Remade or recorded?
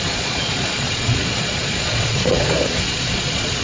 remade